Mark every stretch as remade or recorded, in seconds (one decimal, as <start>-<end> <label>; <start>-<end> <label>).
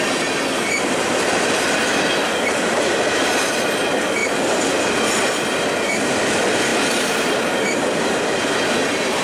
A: 0.0-9.2 recorded